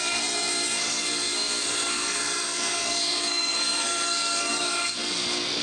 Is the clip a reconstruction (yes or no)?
yes